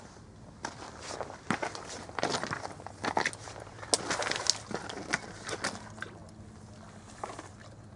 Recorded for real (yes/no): yes